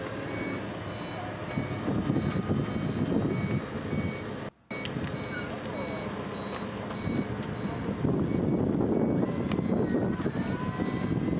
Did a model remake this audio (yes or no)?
no